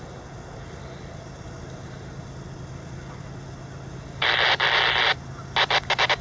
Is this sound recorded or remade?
recorded